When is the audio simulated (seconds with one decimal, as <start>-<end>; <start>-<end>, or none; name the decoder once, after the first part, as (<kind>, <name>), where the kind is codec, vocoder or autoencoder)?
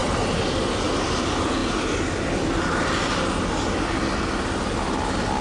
none